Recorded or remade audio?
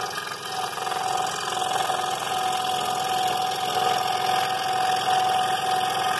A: recorded